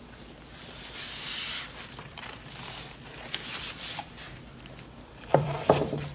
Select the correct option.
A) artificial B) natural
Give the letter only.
A